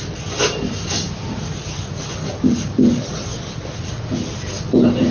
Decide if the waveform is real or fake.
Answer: real